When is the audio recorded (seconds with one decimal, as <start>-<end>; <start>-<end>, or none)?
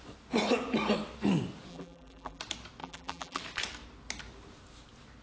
0.0-1.7; 2.4-2.8; 3.4-5.2